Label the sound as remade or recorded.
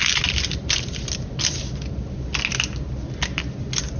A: recorded